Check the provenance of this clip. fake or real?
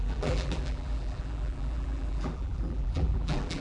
fake